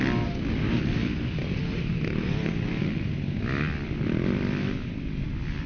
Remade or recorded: recorded